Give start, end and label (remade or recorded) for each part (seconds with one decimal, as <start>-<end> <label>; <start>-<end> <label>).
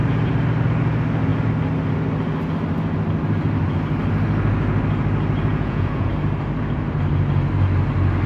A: 0.0-5.5 recorded; 5.5-6.1 remade; 6.1-8.3 recorded